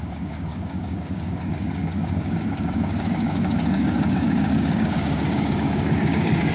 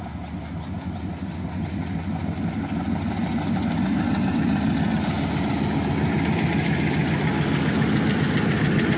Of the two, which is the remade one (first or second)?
first